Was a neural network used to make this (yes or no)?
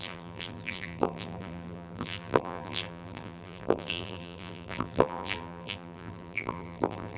yes